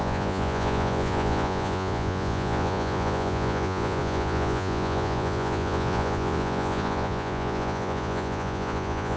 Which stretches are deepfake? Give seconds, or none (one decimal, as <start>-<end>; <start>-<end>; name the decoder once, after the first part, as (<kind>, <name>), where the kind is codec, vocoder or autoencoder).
0.0-9.2 (vocoder, Vocos)